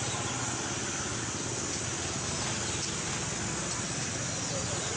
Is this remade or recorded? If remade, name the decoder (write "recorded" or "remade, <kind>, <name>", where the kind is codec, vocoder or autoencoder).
recorded